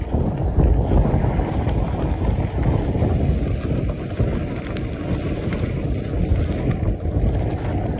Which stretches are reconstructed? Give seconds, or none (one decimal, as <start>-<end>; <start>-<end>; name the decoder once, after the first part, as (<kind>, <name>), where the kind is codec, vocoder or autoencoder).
none